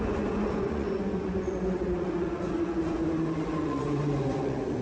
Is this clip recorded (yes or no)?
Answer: no